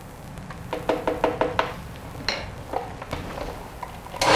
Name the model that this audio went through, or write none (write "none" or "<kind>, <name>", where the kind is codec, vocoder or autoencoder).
none